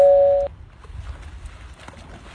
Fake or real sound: real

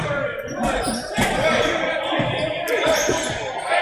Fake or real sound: real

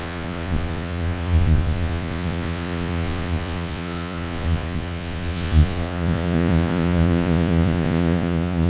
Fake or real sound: fake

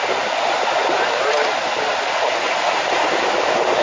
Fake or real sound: real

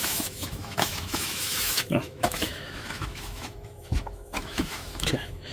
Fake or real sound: fake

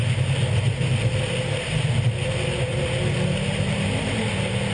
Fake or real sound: real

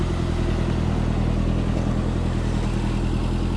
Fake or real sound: real